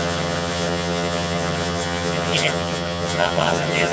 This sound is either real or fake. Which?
fake